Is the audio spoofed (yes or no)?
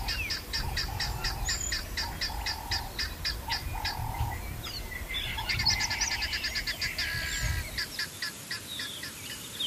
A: no